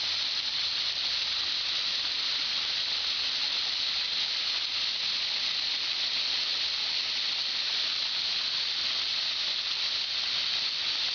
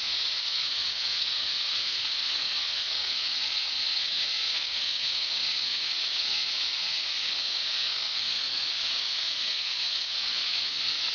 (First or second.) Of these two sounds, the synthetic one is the second